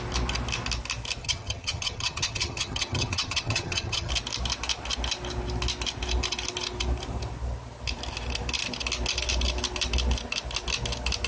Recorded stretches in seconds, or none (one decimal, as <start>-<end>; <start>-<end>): 0.0-1.2; 4.1-11.3